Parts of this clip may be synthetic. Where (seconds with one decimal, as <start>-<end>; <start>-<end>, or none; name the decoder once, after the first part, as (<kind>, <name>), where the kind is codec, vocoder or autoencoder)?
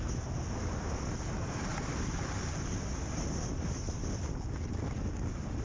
none